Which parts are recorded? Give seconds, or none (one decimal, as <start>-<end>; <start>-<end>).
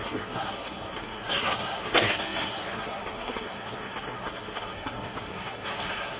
none